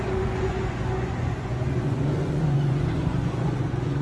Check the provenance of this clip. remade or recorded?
remade